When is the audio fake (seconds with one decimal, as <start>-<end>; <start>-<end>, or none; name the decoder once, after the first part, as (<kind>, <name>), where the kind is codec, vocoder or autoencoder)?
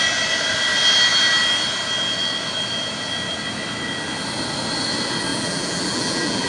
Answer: 5.3-6.5 (vocoder, BigVGAN v2)